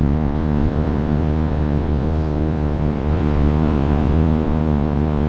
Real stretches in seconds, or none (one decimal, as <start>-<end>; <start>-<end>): none